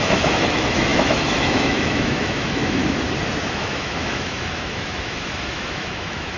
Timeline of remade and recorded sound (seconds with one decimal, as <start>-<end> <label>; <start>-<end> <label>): 0.0-2.8 remade; 2.8-3.5 recorded; 3.5-6.4 remade